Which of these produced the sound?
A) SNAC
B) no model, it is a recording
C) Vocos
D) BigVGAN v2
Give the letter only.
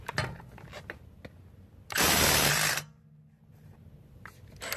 B